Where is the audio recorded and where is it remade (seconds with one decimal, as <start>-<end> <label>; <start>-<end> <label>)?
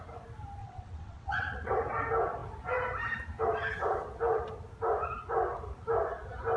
0.0-0.6 recorded; 0.6-1.7 remade; 1.7-6.6 recorded